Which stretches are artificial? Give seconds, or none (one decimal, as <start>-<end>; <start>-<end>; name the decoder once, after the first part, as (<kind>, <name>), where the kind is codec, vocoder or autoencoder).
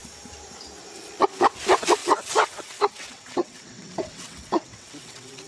2.0-5.5 (vocoder, WaveNeXt)